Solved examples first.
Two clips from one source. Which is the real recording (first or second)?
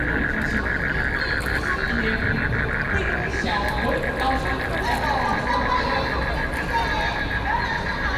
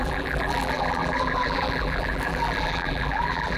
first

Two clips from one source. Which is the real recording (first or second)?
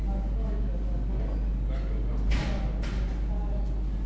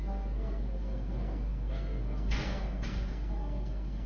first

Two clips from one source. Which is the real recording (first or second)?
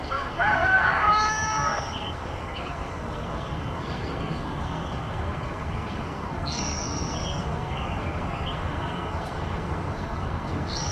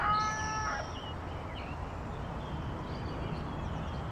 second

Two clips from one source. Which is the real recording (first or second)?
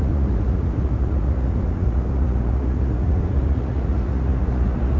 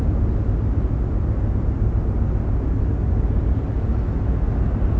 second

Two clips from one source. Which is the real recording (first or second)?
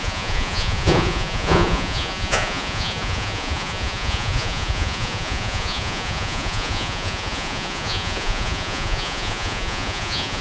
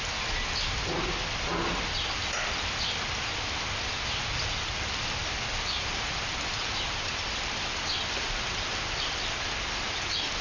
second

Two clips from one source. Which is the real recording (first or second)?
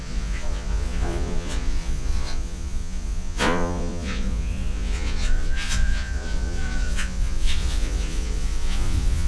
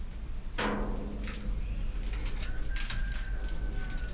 second